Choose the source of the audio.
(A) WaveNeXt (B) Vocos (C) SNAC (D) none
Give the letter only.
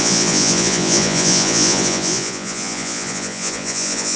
B